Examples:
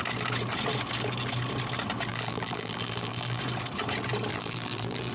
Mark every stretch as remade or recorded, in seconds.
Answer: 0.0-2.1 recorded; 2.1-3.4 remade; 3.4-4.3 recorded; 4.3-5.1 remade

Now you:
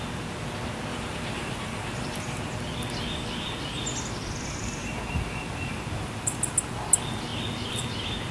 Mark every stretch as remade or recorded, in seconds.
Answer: 0.0-0.9 recorded; 0.9-2.4 remade; 2.4-8.3 recorded

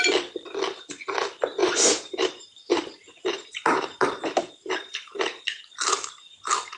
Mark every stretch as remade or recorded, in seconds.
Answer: 0.0-1.6 recorded; 1.6-5.7 remade; 5.7-6.8 recorded

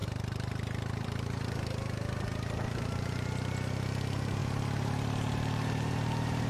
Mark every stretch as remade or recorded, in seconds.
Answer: 0.0-1.4 remade; 1.4-4.4 recorded; 4.4-6.5 remade

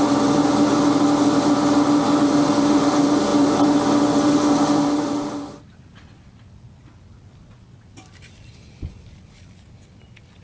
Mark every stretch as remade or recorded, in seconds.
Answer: 0.0-10.4 recorded

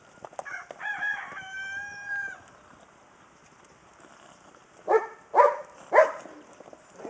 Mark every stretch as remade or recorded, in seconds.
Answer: 0.0-1.1 recorded; 1.1-3.9 remade; 3.9-7.1 recorded

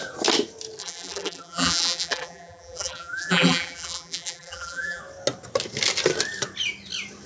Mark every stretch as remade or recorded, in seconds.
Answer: 0.0-0.8 recorded; 0.8-5.0 remade; 5.0-7.3 recorded